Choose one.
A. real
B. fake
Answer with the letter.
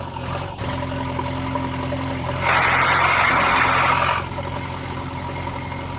A